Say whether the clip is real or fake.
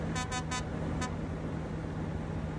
real